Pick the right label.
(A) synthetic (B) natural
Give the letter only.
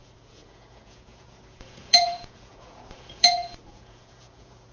A